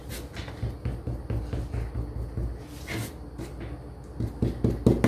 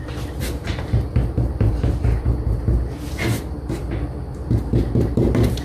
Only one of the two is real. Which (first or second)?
first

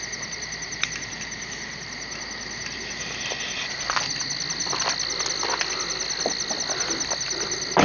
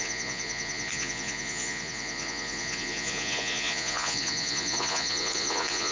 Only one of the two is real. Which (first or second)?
first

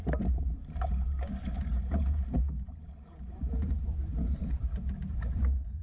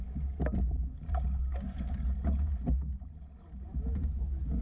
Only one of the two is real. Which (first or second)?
second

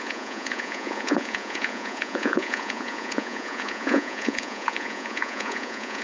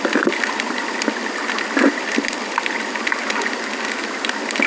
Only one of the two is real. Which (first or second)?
second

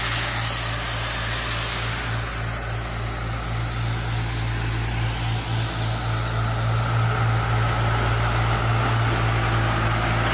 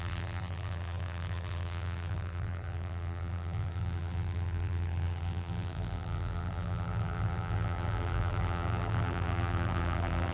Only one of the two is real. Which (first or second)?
first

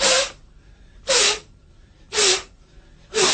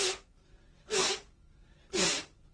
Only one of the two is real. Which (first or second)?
second